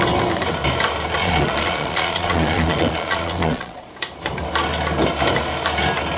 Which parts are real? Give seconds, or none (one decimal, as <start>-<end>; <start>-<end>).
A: 0.0-1.2; 3.9-6.2